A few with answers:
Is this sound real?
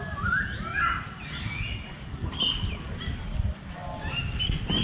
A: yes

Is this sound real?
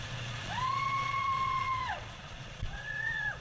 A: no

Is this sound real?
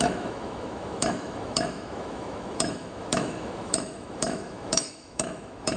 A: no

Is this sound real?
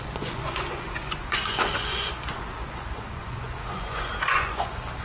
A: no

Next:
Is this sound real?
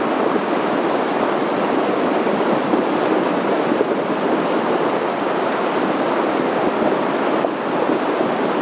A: yes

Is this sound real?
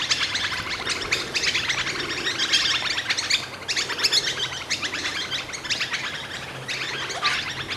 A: yes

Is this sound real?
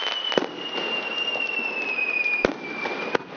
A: yes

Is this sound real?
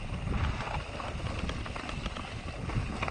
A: yes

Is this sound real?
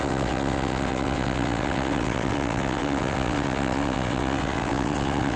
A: no